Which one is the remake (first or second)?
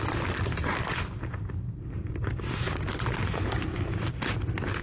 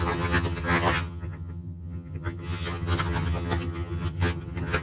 second